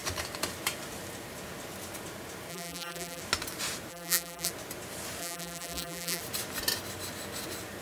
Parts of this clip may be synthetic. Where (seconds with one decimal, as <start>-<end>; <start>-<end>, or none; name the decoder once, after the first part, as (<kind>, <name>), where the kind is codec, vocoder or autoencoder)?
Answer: 2.5-3.2 (vocoder, BigVGAN v2); 3.9-4.5; 5.2-6.2